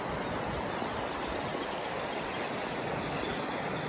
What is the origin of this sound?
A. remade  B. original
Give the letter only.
B